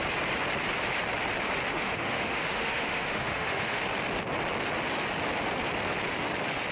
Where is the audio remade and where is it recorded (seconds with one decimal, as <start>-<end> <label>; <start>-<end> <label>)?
0.0-1.7 recorded; 1.7-3.8 remade; 3.8-6.7 recorded